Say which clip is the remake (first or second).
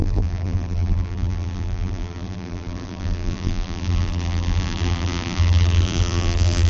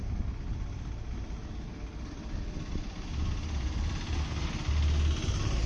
first